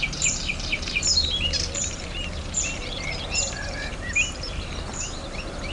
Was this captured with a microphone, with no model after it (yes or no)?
no